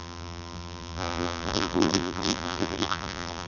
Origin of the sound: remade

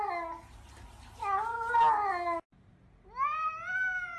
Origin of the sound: recorded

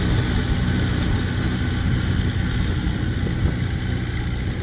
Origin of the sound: recorded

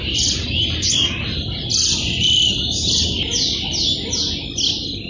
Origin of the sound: recorded